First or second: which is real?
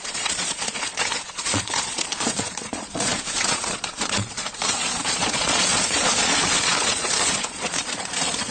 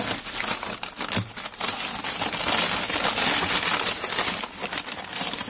second